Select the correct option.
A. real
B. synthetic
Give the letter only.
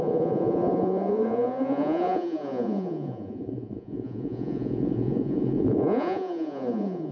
B